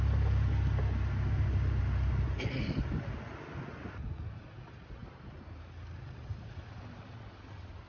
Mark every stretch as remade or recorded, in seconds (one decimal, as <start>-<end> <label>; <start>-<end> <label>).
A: 0.0-5.0 recorded; 5.0-5.6 remade; 5.6-7.9 recorded